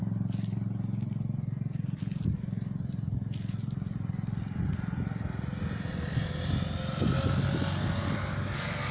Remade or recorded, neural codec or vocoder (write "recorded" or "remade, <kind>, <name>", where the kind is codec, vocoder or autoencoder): recorded